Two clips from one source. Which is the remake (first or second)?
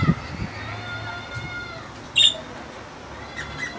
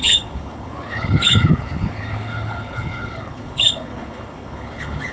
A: second